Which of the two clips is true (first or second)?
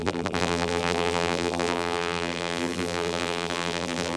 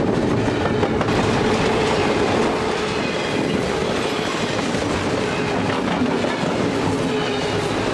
second